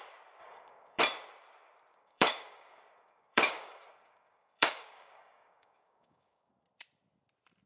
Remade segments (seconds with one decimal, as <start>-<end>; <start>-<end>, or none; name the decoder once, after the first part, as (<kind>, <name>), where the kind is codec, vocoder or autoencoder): 0.4-1.0 (codec, DAC); 1.9-6.5